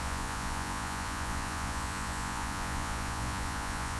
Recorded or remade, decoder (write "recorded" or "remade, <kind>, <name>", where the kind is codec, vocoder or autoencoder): remade, vocoder, Vocos